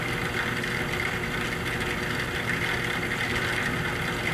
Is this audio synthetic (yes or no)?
no